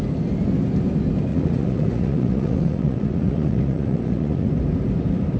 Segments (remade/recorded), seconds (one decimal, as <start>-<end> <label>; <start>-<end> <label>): 0.0-1.3 recorded; 1.3-4.5 remade; 4.5-5.4 recorded

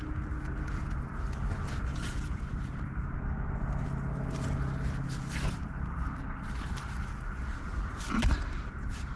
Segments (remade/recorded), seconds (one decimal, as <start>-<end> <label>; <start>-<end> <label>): 0.0-1.9 recorded; 1.9-2.8 remade; 2.8-9.2 recorded

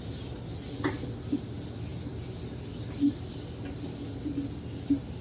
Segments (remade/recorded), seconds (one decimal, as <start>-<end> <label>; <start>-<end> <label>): 0.0-5.2 recorded

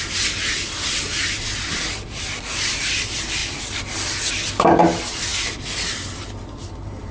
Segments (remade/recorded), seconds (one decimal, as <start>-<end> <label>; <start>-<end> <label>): 0.0-7.1 recorded

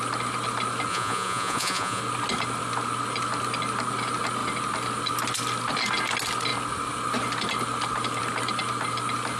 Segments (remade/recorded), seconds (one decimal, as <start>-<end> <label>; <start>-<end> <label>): 0.0-0.9 recorded; 0.9-2.0 remade; 2.0-9.4 recorded

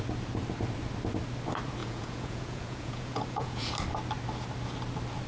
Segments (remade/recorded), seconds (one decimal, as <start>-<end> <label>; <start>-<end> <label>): 0.0-1.8 recorded; 1.8-3.7 remade; 3.7-5.3 recorded